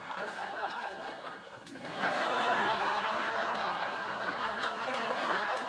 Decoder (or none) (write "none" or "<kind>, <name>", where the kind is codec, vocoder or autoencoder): codec, SNAC